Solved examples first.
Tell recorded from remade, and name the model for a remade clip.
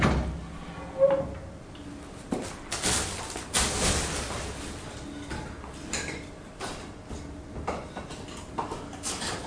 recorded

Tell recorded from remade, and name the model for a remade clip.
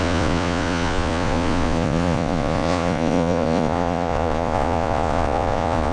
remade, vocoder, Vocos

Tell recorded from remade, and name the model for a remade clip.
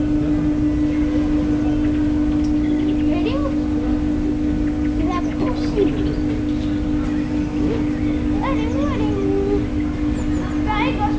recorded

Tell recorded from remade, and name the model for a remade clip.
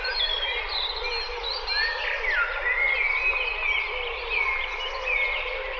recorded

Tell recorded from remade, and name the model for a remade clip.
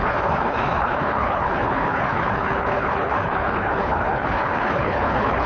remade, codec, HILCodec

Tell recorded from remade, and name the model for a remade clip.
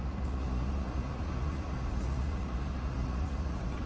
remade, vocoder, Vocos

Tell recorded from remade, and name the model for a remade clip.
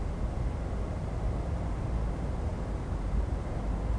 recorded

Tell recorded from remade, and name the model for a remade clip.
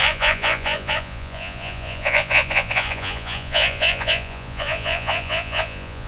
remade, vocoder, Vocos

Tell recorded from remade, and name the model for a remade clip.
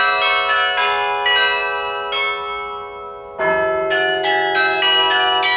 recorded